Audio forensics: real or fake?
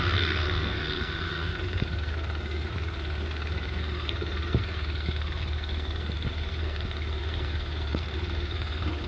fake